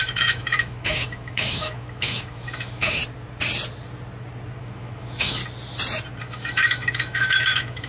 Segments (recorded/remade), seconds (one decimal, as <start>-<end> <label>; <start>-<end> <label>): 0.0-3.0 remade; 3.0-4.6 recorded; 4.6-5.4 remade; 5.4-6.2 recorded; 6.2-7.9 remade